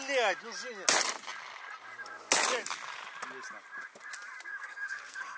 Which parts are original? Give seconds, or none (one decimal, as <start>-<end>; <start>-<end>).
0.0-4.5